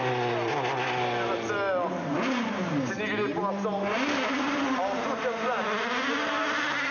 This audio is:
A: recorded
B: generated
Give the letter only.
A